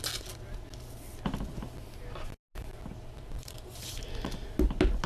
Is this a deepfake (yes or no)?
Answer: no